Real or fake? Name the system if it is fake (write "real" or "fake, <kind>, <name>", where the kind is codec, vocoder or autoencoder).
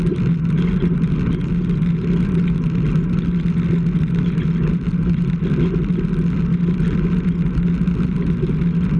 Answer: real